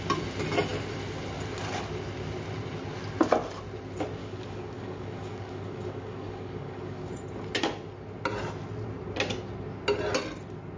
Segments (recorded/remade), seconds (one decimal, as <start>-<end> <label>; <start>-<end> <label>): 0.0-4.2 recorded; 4.2-7.1 remade; 7.1-10.8 recorded